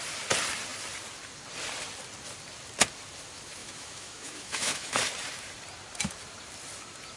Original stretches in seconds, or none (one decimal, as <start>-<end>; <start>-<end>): 0.0-3.6; 5.0-7.2